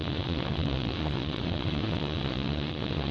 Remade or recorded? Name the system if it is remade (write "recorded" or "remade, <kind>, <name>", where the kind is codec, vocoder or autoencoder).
remade, vocoder, Vocos